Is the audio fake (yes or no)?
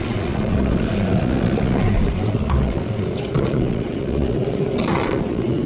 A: yes